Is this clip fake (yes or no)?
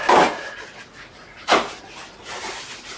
no